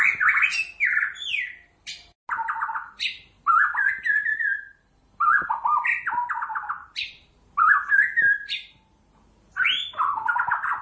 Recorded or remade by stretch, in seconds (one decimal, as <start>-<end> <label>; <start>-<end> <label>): 0.0-10.8 recorded